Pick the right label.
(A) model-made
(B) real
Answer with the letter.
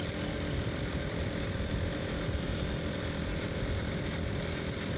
A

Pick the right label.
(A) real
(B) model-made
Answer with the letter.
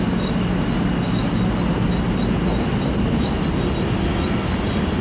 B